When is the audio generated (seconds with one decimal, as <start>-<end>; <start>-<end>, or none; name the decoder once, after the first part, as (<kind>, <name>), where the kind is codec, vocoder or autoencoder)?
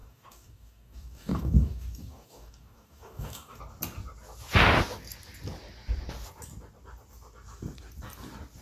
0.0-3.6 (codec, DAC)